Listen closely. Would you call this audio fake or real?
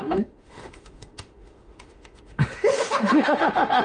fake